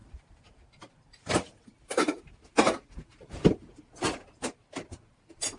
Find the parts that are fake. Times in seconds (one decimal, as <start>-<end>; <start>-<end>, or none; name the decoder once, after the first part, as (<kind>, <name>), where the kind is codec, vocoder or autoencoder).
none